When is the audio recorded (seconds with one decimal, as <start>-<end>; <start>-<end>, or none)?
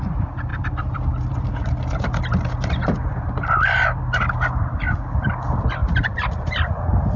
0.0-0.5; 1.5-3.0; 4.0-5.8; 6.8-7.2